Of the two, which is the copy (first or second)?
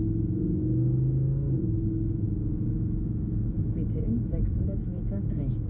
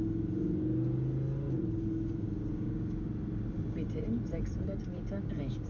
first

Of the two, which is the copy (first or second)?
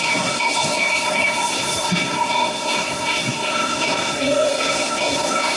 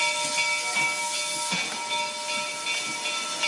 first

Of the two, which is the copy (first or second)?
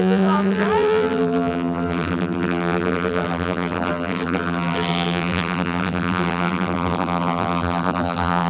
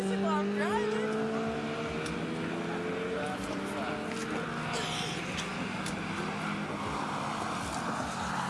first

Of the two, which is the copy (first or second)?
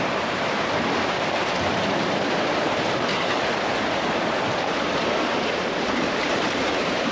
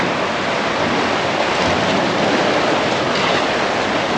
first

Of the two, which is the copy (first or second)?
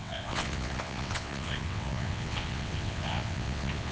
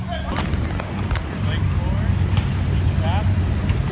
first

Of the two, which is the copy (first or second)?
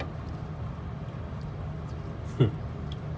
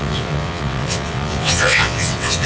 second